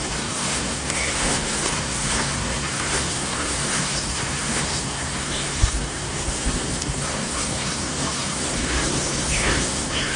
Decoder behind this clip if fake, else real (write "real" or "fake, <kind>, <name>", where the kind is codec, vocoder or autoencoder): fake, codec, SNAC